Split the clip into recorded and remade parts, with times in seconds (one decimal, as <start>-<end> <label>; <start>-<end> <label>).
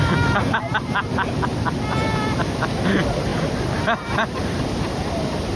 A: 0.0-5.6 recorded